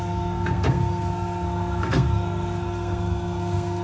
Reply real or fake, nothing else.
fake